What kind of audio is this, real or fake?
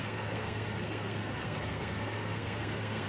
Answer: fake